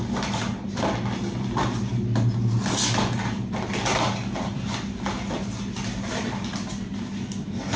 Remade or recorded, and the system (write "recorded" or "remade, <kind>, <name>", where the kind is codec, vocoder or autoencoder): recorded